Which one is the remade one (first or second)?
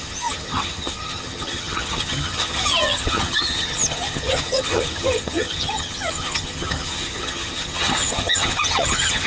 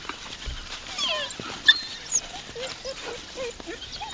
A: first